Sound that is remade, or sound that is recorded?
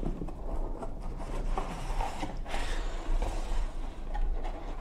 remade